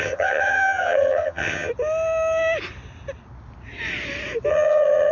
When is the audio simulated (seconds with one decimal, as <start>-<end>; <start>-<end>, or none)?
0.0-1.7; 4.5-5.1